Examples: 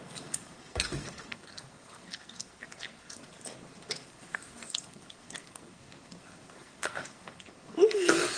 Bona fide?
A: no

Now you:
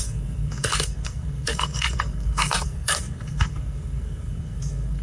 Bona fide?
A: no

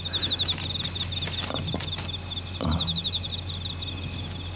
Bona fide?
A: yes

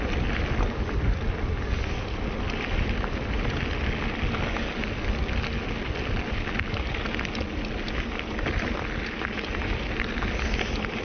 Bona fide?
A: yes